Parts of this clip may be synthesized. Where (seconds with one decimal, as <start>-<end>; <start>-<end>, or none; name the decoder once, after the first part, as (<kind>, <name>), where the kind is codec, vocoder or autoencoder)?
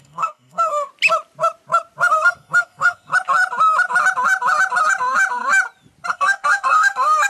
0.0-0.9 (codec, SNAC); 2.1-3.1; 6.1-7.3